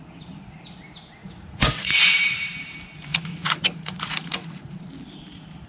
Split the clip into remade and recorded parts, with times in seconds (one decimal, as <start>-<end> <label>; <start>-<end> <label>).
0.0-1.2 recorded; 1.2-2.5 remade; 2.5-3.1 recorded; 3.1-4.8 remade; 4.8-5.7 recorded